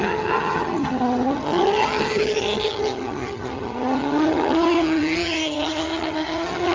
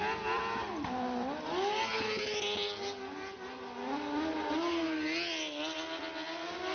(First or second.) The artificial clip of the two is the first